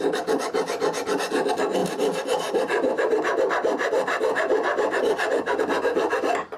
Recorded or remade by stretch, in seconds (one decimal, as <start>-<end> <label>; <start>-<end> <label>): 0.0-1.8 recorded; 1.8-5.6 remade; 5.6-6.6 recorded